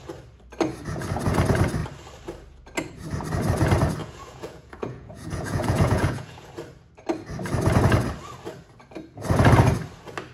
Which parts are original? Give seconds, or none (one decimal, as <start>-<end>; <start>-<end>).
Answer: 0.0-4.0; 6.5-10.3